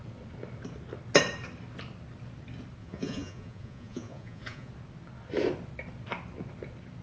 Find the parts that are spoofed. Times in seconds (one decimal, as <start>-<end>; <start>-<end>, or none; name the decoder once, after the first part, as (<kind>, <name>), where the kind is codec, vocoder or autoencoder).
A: 2.8-4.7 (vocoder, Vocos)